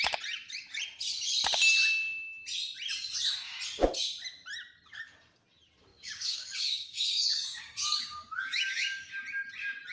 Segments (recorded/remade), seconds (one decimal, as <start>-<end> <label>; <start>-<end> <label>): 0.0-5.9 recorded; 5.9-9.1 remade; 9.1-9.9 recorded